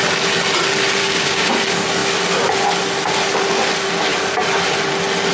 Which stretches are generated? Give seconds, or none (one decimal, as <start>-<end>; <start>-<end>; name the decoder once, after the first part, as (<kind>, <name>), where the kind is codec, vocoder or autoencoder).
1.0-1.5 (codec, DAC)